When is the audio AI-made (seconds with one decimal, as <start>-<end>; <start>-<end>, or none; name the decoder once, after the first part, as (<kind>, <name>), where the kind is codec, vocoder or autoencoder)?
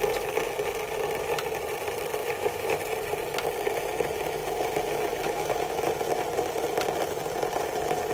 2.2-2.8 (autoencoder, DAC-VAE); 4.4-5.8